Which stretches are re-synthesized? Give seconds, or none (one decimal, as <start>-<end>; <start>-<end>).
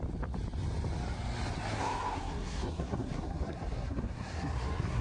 1.7-5.0